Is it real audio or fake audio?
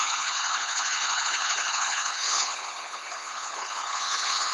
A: fake